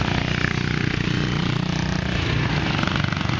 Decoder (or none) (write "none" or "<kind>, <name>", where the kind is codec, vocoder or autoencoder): none